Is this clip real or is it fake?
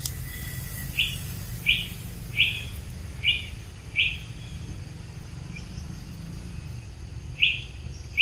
real